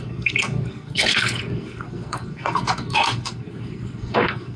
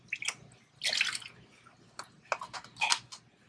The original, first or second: second